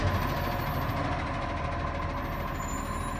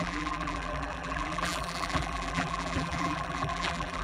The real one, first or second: first